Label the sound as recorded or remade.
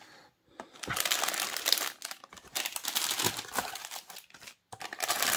recorded